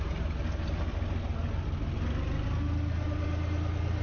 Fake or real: real